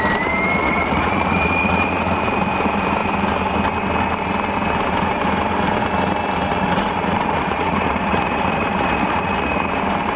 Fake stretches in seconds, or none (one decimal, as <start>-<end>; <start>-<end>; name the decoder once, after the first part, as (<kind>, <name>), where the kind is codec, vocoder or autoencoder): 0.6-2.2 (vocoder, Vocos); 6.5-9.7